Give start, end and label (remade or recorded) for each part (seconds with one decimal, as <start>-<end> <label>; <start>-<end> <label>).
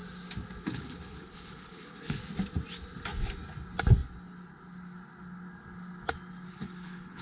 0.0-0.6 recorded; 0.6-2.2 remade; 2.2-6.5 recorded; 6.5-7.2 remade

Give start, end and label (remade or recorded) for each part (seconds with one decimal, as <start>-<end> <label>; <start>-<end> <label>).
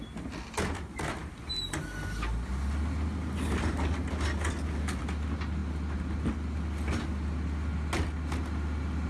0.0-9.1 recorded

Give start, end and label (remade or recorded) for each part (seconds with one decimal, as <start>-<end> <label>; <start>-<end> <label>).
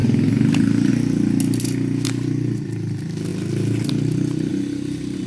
0.0-5.3 recorded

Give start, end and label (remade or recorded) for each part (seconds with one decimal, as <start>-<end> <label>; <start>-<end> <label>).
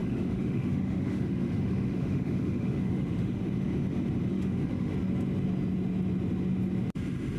0.0-3.4 remade; 3.4-4.3 recorded; 4.3-4.9 remade; 4.9-7.4 recorded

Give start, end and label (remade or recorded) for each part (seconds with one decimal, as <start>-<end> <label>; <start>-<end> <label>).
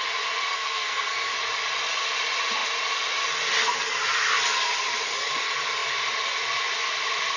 0.0-0.5 recorded; 0.5-1.3 remade; 1.3-7.4 recorded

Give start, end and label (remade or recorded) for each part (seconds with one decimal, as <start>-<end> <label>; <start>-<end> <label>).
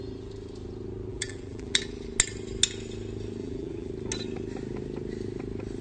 0.0-1.1 recorded; 1.1-1.8 remade; 1.8-3.4 recorded; 3.4-3.9 remade; 3.9-5.8 recorded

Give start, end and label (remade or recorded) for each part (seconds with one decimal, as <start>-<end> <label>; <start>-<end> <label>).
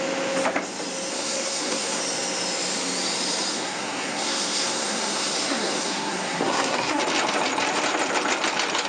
0.0-1.1 recorded; 1.1-2.0 remade; 2.0-3.5 recorded; 3.5-7.0 remade; 7.0-8.9 recorded